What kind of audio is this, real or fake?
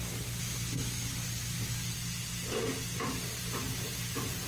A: real